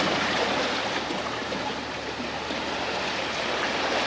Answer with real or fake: real